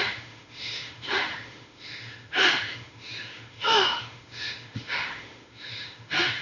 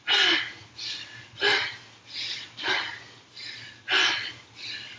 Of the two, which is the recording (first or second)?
second